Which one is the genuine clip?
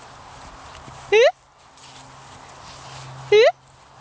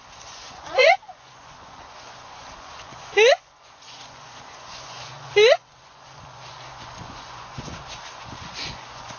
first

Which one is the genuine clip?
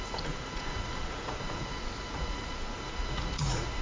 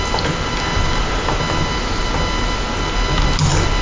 second